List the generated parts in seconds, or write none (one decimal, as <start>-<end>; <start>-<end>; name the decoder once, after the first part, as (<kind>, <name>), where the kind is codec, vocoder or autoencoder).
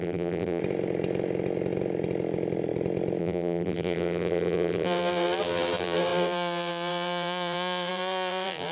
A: 0.0-0.6 (vocoder, BigVGAN v2); 3.2-8.7